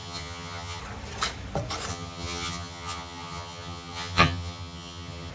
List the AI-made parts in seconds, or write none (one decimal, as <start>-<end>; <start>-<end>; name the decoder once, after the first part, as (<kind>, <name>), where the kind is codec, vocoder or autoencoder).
0.0-0.8 (vocoder, HiFi-GAN); 1.9-5.3